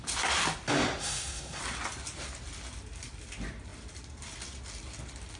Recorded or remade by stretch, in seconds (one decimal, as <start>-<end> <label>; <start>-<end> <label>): 0.0-1.0 recorded; 1.0-1.6 remade; 1.6-5.4 recorded